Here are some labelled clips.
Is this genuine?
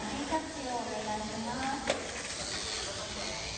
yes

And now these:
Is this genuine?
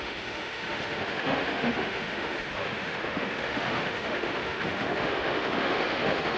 no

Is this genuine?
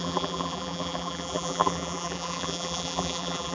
no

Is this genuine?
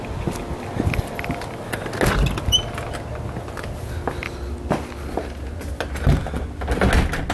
yes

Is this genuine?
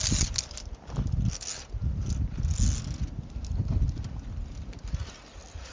yes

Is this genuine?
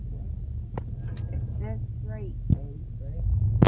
yes